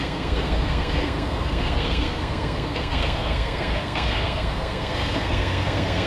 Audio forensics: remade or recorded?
remade